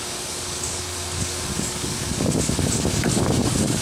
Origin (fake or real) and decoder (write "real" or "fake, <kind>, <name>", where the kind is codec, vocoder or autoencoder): fake, codec, DAC